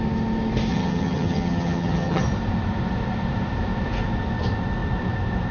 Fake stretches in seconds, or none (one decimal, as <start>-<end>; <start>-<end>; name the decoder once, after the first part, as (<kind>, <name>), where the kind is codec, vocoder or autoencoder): 0.7-2.2 (vocoder, HiFi-GAN)